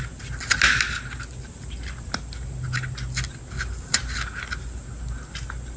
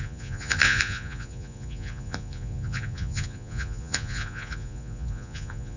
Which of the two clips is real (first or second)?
first